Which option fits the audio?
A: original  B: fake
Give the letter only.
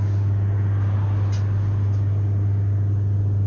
A